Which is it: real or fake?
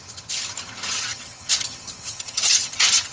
fake